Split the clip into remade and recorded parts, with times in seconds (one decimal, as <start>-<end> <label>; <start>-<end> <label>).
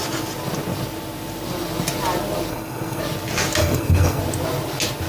0.0-2.5 recorded; 2.5-3.0 remade; 3.0-3.6 recorded; 3.6-4.2 remade; 4.2-5.1 recorded